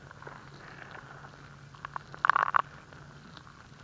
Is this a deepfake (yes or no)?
no